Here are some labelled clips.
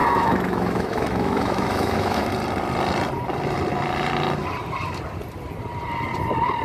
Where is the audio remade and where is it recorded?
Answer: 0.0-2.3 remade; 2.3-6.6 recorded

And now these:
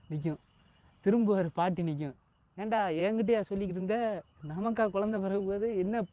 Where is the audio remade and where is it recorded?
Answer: 0.0-3.0 remade; 3.0-3.7 recorded; 3.7-6.1 remade

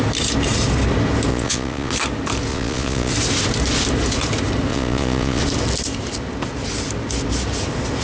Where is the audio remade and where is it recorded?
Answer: 0.0-1.3 recorded; 1.3-1.9 remade; 1.9-2.5 recorded; 2.5-3.1 remade; 3.1-4.7 recorded; 4.7-5.4 remade; 5.4-8.0 recorded

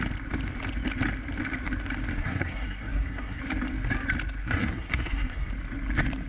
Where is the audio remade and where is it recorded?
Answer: 0.0-2.1 recorded; 2.1-3.4 remade; 3.4-4.4 recorded; 4.4-5.5 remade; 5.5-6.3 recorded